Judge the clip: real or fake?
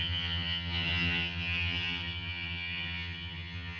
fake